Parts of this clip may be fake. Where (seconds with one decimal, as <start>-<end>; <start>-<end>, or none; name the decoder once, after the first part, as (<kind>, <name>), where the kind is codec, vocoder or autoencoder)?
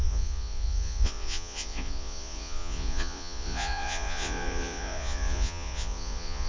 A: 0.0-6.5 (vocoder, Vocos)